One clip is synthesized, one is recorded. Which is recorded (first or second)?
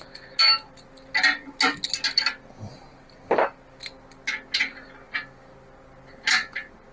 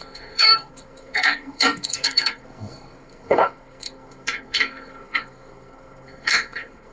first